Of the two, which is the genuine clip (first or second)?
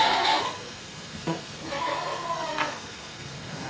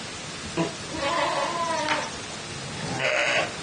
second